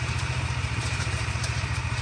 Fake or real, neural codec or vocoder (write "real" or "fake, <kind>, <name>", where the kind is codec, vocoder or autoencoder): fake, vocoder, BigVGAN v2